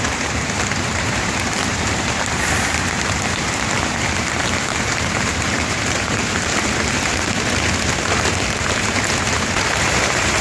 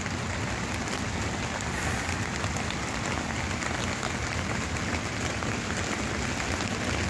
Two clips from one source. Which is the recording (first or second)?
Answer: second